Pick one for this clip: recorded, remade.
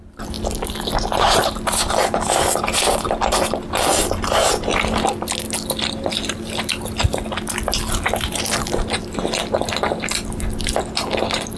recorded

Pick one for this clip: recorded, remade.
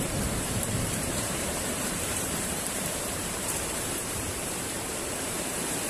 remade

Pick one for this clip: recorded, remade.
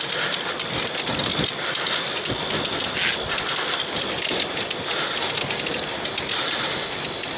recorded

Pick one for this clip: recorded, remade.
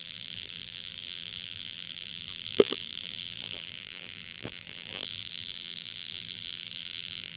remade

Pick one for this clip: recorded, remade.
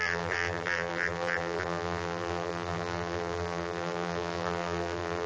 remade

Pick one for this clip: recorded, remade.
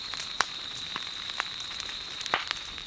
remade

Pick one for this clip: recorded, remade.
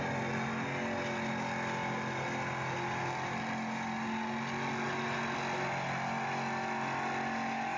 recorded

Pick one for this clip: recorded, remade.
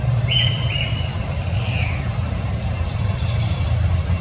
remade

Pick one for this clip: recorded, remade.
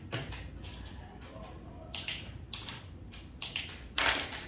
recorded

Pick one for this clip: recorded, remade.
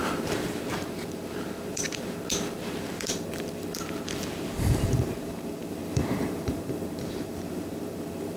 remade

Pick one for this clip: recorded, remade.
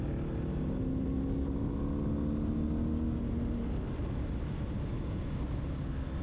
recorded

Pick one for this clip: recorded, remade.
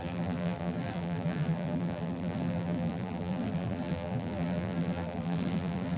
remade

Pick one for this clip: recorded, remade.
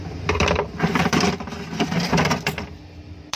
remade